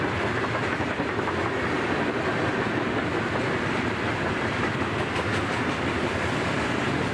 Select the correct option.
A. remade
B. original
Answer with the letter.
B